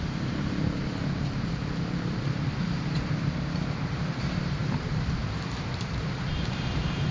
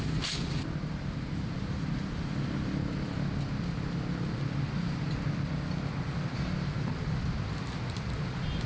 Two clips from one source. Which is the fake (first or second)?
first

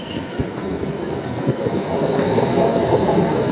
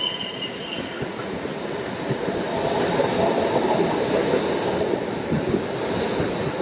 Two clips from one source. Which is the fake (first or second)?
first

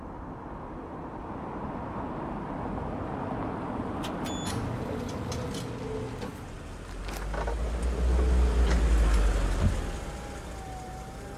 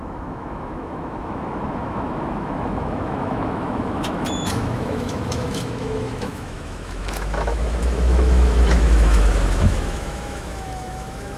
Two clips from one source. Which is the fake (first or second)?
second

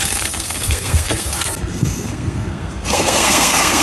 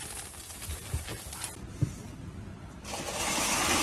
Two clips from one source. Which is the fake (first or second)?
first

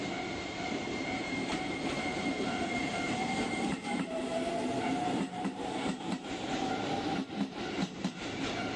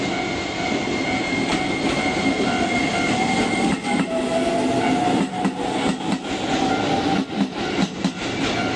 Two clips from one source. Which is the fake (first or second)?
first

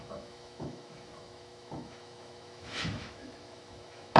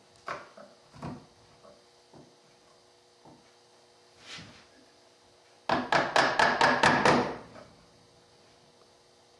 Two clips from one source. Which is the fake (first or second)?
first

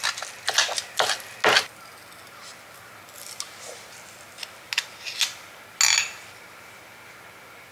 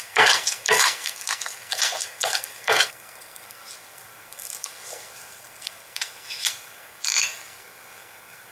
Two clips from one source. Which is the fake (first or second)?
second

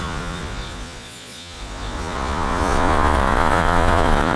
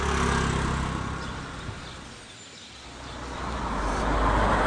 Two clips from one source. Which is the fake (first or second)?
first